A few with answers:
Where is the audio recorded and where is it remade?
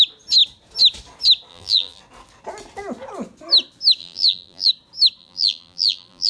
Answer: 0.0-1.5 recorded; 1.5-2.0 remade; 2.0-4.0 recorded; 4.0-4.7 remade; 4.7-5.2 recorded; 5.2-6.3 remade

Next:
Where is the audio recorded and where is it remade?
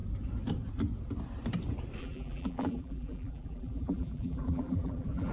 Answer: 0.0-2.0 recorded; 2.0-5.3 remade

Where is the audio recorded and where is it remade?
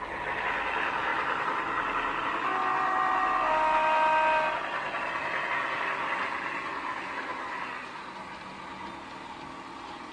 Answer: 0.0-10.1 recorded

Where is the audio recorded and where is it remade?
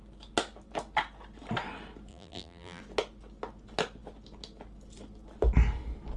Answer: 0.0-2.1 recorded; 2.1-2.8 remade; 2.8-6.2 recorded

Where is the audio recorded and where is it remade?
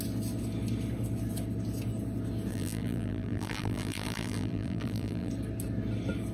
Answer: 0.0-2.5 recorded; 2.5-5.3 remade; 5.3-6.3 recorded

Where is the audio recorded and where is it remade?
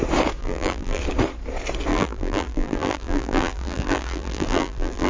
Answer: 0.0-0.4 recorded; 0.4-1.0 remade; 1.0-1.9 recorded; 1.9-5.1 remade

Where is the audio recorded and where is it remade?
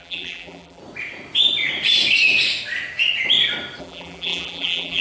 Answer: 0.0-0.8 remade; 0.8-3.8 recorded; 3.8-5.0 remade